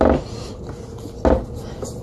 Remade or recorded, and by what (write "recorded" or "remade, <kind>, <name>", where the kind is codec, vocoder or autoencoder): recorded